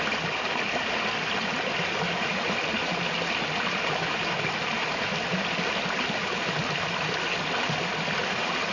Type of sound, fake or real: real